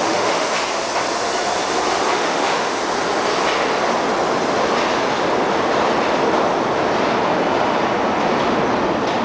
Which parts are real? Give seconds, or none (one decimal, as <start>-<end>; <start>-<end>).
0.6-2.1; 2.8-9.2